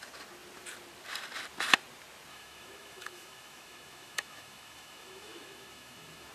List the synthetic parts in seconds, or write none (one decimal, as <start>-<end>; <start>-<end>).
2.3-6.3